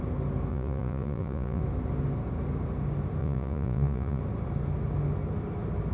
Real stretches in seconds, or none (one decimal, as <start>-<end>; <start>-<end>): 0.0-0.5; 1.6-3.2; 4.2-5.9